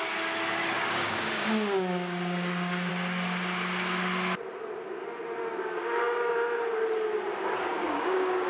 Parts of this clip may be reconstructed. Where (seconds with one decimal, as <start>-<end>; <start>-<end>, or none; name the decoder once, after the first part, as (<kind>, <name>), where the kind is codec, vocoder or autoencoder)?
0.6-2.9 (codec, DAC); 5.4-6.3; 7.7-8.5